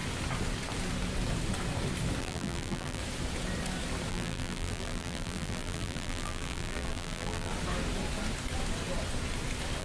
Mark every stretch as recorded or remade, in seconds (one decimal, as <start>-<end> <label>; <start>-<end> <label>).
0.0-2.2 recorded; 2.2-3.0 remade; 3.0-4.1 recorded; 4.1-7.5 remade; 7.5-9.8 recorded